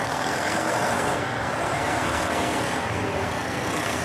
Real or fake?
fake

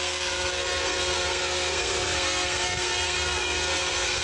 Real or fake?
fake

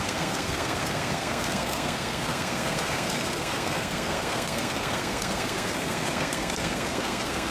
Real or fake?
fake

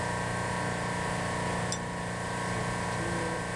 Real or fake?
real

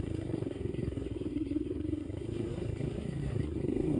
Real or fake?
fake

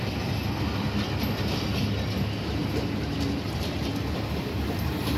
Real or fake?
real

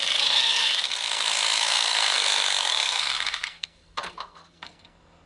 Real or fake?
fake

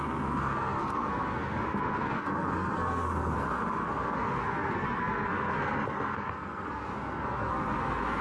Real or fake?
fake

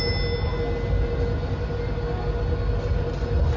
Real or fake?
real